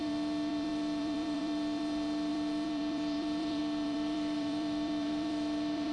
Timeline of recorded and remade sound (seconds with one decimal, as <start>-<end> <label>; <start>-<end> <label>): 0.0-5.9 remade